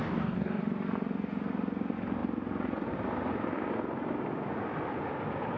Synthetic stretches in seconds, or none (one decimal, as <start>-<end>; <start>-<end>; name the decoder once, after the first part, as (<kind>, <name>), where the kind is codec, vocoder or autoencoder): 0.0-0.6 (codec, DAC)